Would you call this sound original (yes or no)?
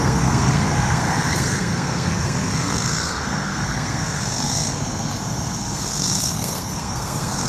no